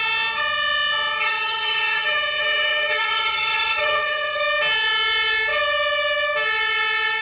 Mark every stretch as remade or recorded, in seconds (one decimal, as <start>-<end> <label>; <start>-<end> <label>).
0.0-1.2 recorded; 1.2-4.4 remade; 4.4-7.2 recorded